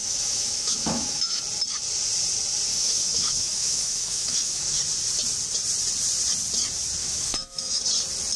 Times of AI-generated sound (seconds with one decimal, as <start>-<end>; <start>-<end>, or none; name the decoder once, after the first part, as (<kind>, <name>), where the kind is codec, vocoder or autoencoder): 0.0-1.4 (autoencoder, DAC-VAE); 2.7-4.8; 7.0-7.8